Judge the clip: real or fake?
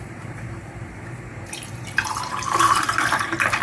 fake